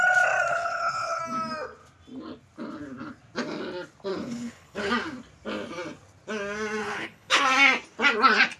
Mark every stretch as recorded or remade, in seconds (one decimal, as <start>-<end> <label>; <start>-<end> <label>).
0.0-0.5 recorded; 0.5-1.2 remade; 1.2-4.1 recorded; 4.1-4.9 remade; 4.9-6.8 recorded; 6.8-7.4 remade; 7.4-8.6 recorded

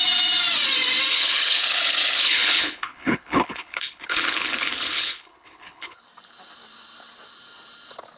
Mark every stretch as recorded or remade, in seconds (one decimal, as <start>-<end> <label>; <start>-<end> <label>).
0.0-1.1 recorded; 1.1-6.0 remade; 6.0-8.2 recorded

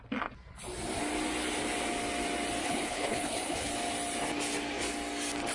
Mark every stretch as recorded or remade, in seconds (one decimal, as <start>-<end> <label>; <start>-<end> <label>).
0.0-2.6 recorded; 2.6-3.7 remade; 3.7-5.5 recorded

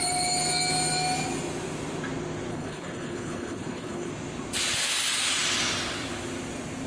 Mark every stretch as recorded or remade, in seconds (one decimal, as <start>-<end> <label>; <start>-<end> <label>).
0.0-2.5 recorded; 2.5-4.1 remade; 4.1-6.9 recorded